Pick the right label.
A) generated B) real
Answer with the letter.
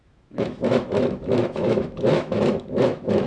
A